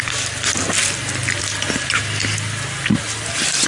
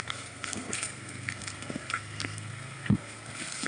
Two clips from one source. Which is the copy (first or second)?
second